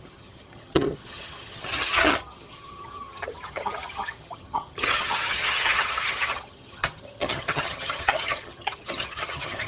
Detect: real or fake fake